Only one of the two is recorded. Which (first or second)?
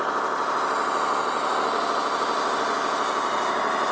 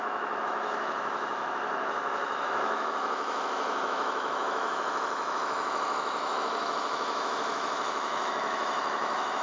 first